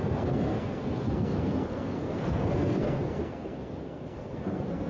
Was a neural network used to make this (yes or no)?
yes